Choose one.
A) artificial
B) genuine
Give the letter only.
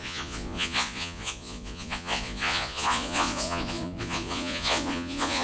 A